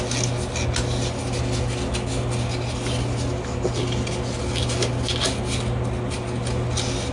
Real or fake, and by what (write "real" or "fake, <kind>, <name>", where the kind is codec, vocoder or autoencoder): real